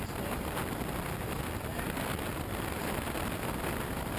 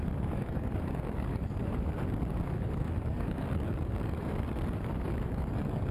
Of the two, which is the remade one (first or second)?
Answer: second